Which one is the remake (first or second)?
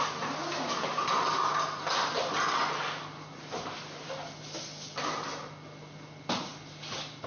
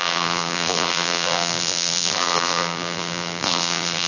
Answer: second